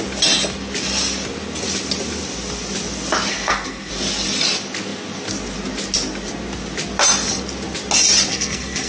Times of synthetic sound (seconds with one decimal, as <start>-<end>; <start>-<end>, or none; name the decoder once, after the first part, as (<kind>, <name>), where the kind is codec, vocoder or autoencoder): 3.3-3.9 (codec, SNAC); 8.3-8.9